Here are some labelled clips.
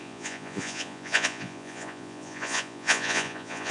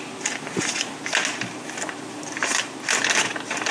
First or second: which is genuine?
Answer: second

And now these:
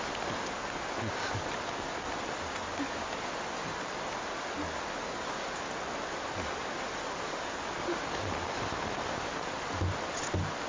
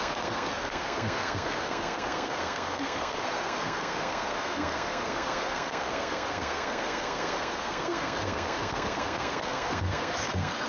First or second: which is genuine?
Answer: first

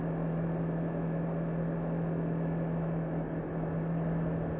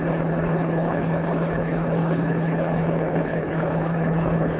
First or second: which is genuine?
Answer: first